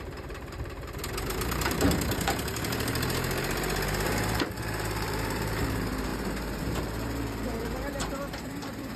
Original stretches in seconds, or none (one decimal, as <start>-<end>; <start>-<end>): none